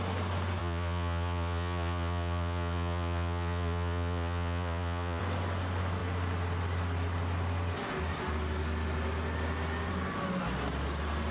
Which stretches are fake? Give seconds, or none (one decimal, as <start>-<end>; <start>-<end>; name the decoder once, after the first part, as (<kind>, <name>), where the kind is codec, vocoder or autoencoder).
0.6-5.2 (vocoder, Vocos)